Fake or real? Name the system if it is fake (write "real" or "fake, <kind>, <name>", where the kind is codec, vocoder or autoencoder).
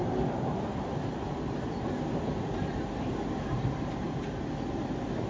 real